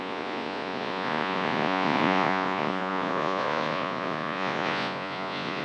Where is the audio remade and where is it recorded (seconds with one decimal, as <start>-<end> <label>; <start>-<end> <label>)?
0.0-5.6 remade